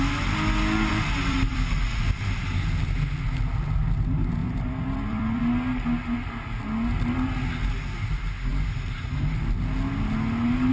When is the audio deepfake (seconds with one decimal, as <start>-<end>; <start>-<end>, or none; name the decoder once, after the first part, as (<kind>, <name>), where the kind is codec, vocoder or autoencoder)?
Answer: 0.9-2.4 (vocoder, BigVGAN v2); 4.4-5.4